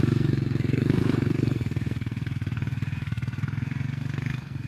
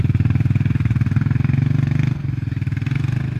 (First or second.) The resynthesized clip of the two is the first